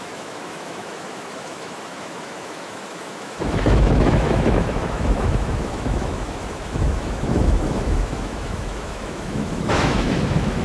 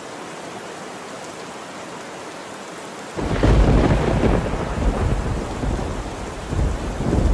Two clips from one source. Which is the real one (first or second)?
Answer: second